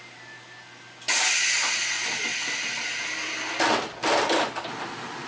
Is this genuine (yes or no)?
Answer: yes